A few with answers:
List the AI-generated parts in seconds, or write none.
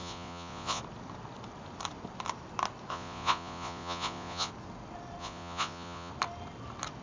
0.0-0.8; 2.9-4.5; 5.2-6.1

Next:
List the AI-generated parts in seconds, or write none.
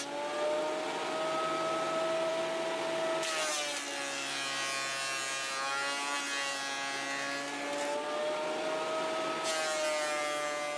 none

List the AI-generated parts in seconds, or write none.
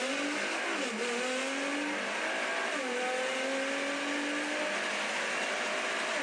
none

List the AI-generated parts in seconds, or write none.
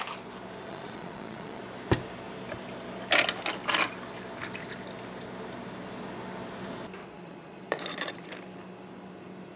0.6-1.6; 7.0-8.3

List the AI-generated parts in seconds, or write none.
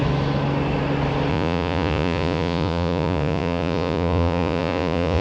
1.3-5.2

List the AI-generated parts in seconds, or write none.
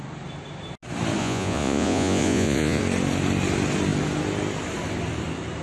1.2-2.8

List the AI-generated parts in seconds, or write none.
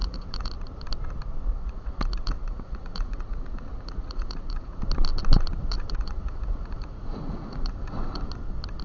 0.0-0.5; 1.5-4.8; 5.6-8.3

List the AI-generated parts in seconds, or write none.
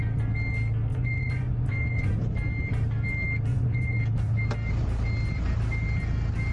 0.9-2.1; 3.5-4.0